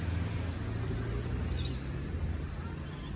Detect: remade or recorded recorded